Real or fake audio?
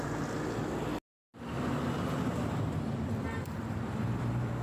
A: real